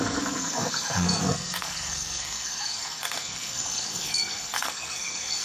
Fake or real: fake